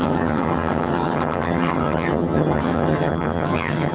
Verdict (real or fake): fake